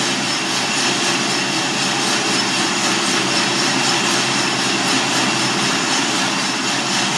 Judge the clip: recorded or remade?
recorded